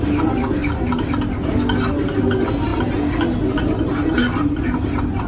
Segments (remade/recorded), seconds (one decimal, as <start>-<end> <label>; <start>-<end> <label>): 0.0-5.3 recorded